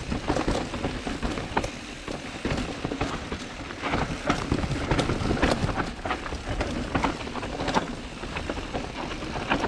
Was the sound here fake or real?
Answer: real